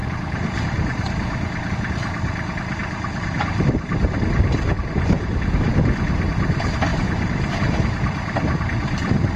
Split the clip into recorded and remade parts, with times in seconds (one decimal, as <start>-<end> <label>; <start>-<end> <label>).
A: 0.0-1.7 remade; 1.7-2.8 recorded; 2.8-5.5 remade; 5.5-6.9 recorded; 6.9-7.5 remade; 7.5-9.4 recorded